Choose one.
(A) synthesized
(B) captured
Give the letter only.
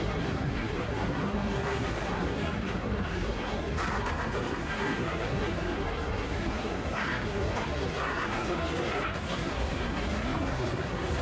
A